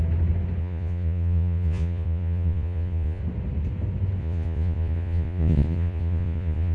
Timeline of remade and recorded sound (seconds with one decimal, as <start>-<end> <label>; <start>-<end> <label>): 0.0-0.6 recorded; 0.6-3.2 remade; 3.2-4.2 recorded; 4.2-6.7 remade